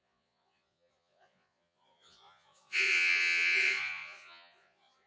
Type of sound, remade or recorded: remade